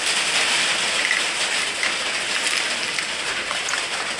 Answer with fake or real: real